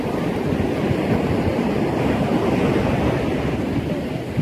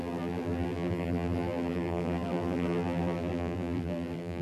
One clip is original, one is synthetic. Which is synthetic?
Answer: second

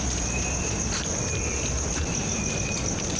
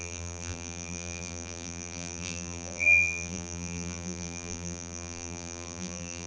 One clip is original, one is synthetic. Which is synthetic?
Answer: second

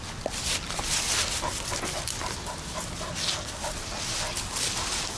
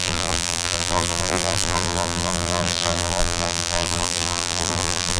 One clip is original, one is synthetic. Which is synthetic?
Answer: second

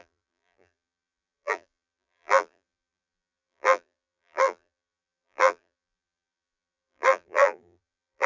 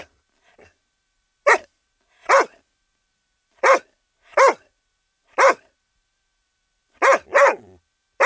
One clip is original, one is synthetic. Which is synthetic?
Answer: first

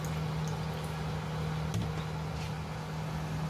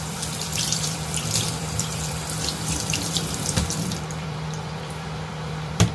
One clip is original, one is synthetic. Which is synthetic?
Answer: second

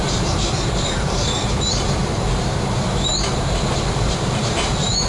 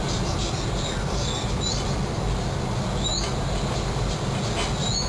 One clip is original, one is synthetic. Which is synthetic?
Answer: first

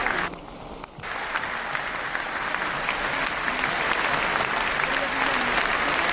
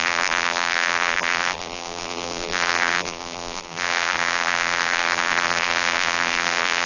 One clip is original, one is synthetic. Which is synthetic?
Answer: second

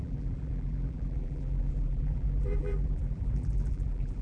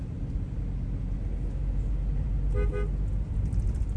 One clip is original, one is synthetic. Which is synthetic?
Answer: first